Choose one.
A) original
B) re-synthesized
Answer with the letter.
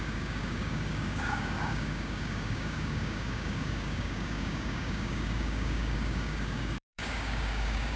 B